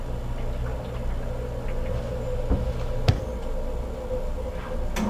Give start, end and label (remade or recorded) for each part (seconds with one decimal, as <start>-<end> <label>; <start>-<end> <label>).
0.0-5.1 recorded